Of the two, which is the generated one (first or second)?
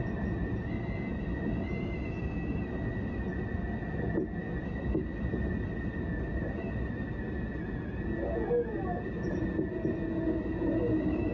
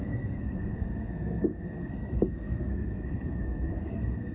second